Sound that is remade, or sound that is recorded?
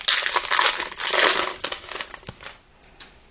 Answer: recorded